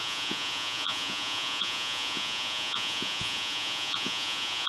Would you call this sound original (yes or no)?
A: no